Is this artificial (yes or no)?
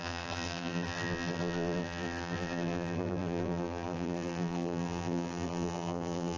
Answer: yes